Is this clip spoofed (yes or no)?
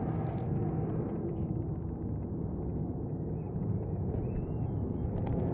no